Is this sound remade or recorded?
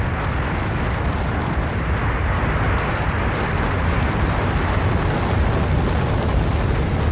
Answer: recorded